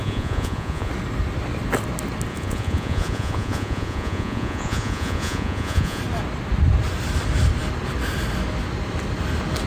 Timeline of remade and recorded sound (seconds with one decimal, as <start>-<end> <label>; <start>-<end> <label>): 0.0-0.9 remade; 0.9-2.3 recorded; 2.3-6.0 remade; 6.0-9.7 recorded